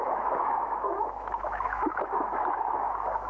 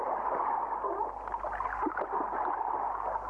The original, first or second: second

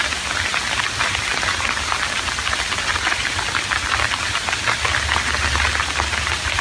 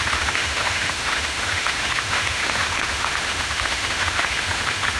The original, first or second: first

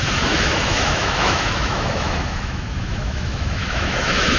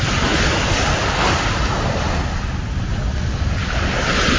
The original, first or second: second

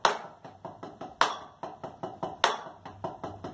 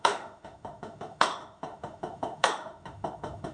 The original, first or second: first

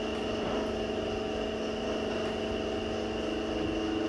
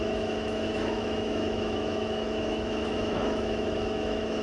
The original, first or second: first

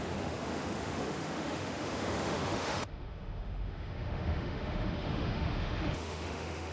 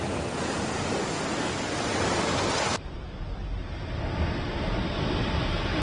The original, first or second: second